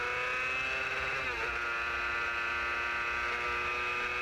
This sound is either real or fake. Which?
real